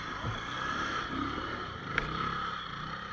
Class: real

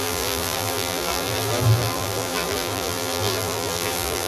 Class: fake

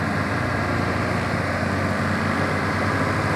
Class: real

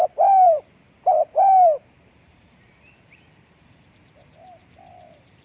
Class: fake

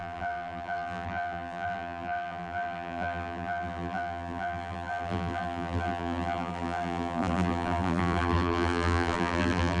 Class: fake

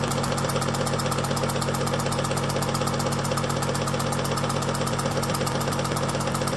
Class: real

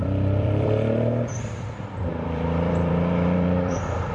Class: fake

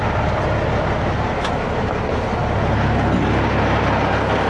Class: real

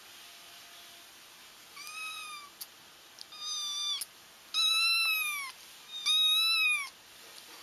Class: real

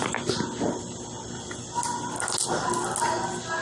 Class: real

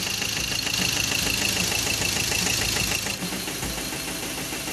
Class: real